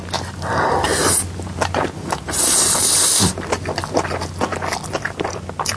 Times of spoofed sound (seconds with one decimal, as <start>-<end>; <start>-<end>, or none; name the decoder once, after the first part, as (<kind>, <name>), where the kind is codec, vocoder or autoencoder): none

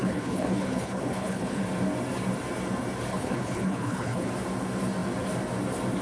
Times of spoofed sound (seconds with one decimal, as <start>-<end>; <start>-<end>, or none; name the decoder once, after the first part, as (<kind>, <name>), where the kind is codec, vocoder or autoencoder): 0.0-1.6 (codec, HILCodec); 3.1-4.3